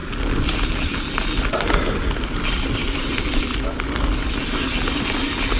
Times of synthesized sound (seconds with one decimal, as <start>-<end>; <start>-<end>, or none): none